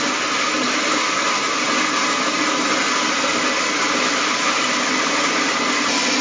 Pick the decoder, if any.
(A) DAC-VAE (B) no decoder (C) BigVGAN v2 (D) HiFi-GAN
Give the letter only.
B